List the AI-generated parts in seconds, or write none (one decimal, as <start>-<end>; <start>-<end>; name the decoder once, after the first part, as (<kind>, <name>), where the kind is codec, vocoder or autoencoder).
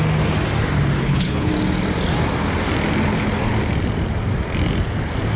1.0-1.5 (codec, HILCodec)